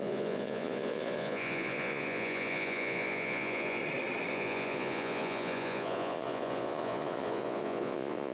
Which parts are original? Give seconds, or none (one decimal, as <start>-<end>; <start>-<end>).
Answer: 3.8-4.3